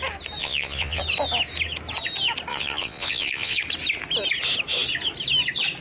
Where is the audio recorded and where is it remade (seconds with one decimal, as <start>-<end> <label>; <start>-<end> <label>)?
0.0-0.4 recorded; 0.4-1.0 remade; 1.0-2.5 recorded; 2.5-3.6 remade; 3.6-5.8 recorded